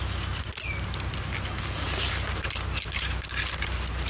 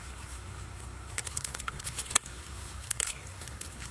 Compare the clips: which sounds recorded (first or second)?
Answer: first